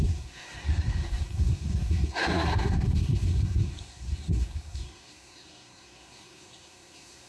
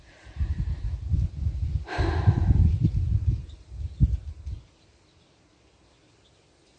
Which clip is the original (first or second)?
second